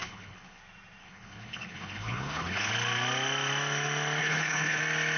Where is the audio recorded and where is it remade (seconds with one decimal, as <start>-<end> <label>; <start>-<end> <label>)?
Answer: 0.0-0.6 remade; 0.6-1.0 recorded; 1.0-2.7 remade; 2.7-4.2 recorded; 4.2-4.8 remade; 4.8-5.2 recorded